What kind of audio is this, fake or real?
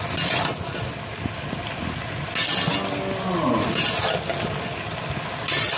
real